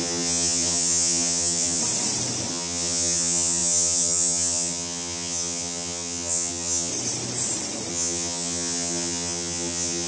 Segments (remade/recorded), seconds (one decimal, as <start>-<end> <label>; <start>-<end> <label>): 0.0-1.8 remade; 1.8-2.5 recorded; 2.5-6.9 remade; 6.9-7.9 recorded; 7.9-10.1 remade